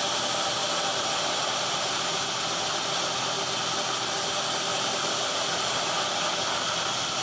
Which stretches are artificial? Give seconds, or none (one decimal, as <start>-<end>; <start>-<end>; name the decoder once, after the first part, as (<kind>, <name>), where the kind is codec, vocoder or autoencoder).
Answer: none